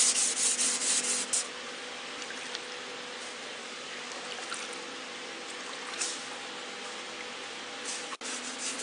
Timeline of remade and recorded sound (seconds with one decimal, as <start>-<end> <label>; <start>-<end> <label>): 0.0-3.6 recorded; 3.6-4.2 remade; 4.2-8.8 recorded